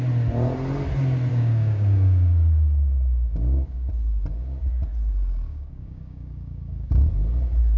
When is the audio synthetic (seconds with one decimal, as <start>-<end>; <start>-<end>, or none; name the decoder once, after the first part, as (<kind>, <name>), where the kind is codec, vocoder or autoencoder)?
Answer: 1.3-3.9 (codec, DAC); 5.5-7.1